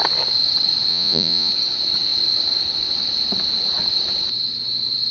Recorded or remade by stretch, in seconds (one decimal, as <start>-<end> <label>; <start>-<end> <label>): 0.0-0.9 recorded; 0.9-1.5 remade; 1.5-5.1 recorded